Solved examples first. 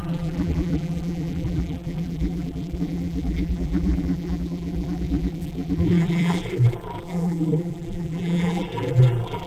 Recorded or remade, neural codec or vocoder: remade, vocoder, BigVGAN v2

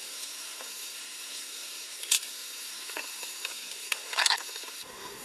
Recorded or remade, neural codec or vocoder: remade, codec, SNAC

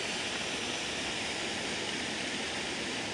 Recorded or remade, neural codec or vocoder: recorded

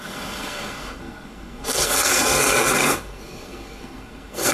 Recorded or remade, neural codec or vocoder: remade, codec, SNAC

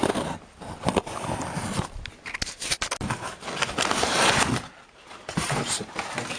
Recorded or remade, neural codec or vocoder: recorded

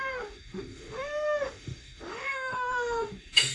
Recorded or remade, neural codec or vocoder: remade, autoencoder, DAC-VAE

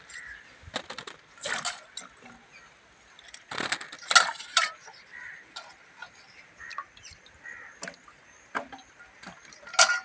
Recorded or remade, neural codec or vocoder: recorded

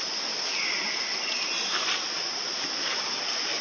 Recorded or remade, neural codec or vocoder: recorded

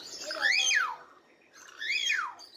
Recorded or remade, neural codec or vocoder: recorded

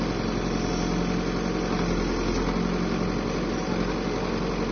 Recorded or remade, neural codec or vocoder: recorded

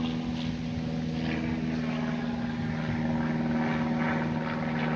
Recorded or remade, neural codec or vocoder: recorded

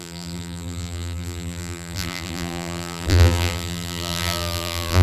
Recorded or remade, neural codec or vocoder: remade, vocoder, BigVGAN v2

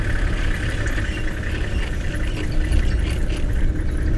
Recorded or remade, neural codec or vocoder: recorded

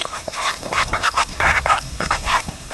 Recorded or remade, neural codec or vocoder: remade, codec, SNAC